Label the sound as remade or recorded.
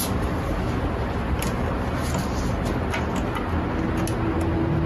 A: recorded